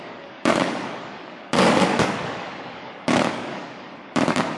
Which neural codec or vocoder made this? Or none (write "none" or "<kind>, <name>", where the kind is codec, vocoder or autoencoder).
codec, DAC